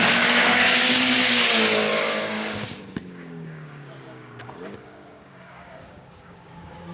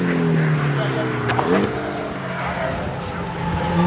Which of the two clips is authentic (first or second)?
second